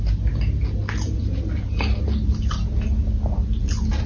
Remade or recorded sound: recorded